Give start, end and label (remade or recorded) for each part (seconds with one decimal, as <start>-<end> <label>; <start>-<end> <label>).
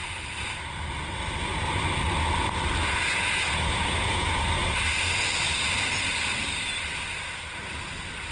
0.0-2.8 recorded; 2.8-4.4 remade; 4.4-8.3 recorded